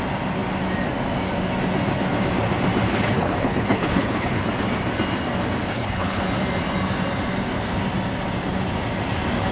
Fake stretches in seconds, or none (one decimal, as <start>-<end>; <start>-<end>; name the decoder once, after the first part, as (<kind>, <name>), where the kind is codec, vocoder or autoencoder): 2.9-4.5 (codec, HILCodec); 5.7-6.2